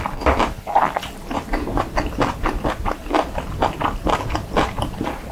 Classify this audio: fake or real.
real